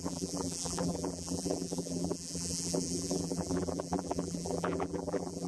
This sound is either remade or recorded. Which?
remade